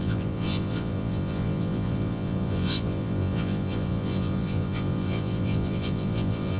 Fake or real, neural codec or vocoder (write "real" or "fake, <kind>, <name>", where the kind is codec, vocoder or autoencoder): fake, vocoder, Vocos